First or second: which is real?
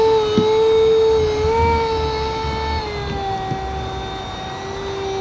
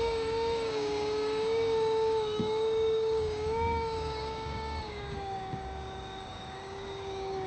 first